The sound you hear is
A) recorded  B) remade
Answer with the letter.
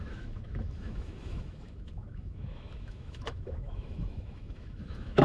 B